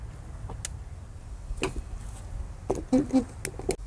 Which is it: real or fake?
real